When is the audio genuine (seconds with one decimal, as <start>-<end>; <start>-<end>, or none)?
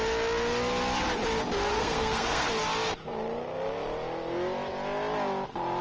0.0-1.7; 2.5-5.8